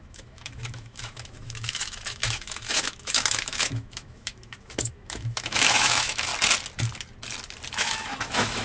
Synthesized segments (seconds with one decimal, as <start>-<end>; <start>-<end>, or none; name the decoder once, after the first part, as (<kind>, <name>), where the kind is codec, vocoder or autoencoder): 0.0-6.3 (autoencoder, DAC-VAE); 7.7-8.6